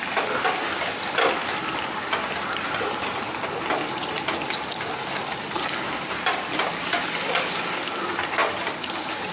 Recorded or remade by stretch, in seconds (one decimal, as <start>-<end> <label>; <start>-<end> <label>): 0.0-9.3 recorded